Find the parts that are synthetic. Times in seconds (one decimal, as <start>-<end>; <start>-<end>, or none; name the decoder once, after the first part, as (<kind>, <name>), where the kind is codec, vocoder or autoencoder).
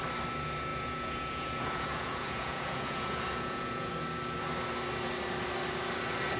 0.7-3.9 (vocoder, Vocos)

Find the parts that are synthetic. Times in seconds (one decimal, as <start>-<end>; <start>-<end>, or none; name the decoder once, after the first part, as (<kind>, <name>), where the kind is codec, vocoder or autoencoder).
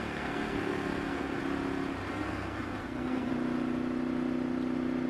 0.0-1.4 (codec, SNAC); 2.1-3.3